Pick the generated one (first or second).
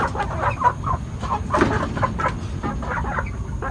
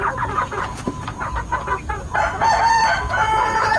second